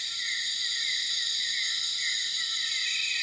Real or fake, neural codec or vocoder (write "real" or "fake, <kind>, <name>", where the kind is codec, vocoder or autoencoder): real